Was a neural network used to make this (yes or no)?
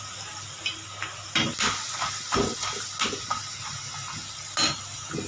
no